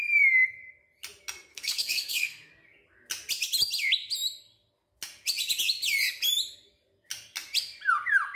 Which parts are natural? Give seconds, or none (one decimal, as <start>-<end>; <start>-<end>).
0.0-1.5; 2.5-8.4